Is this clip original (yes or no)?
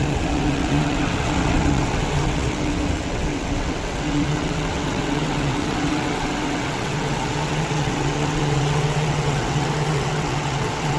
no